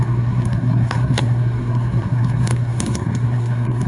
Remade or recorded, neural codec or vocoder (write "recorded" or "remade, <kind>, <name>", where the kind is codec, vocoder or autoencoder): remade, codec, SNAC